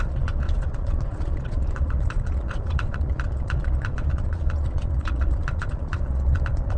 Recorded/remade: remade